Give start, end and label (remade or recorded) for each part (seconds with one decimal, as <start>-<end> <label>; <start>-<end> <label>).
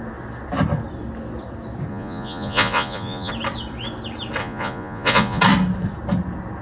0.0-1.9 recorded; 1.9-3.3 remade; 3.3-4.4 recorded; 4.4-5.4 remade; 5.4-6.6 recorded